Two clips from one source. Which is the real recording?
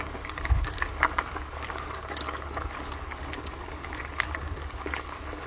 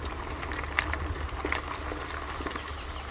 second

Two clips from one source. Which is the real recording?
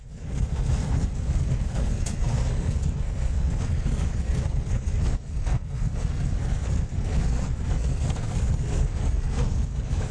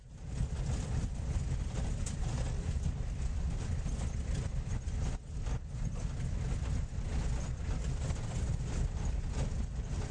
second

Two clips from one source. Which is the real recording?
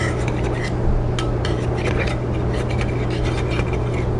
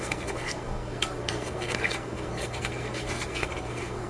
first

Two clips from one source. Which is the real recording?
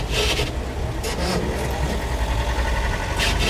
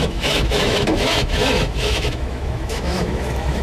first